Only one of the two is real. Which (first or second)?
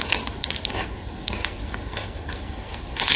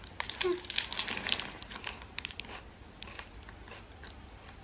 second